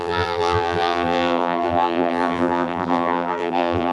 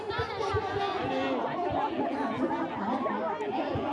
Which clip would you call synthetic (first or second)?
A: first